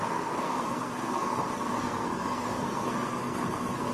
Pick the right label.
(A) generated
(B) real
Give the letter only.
A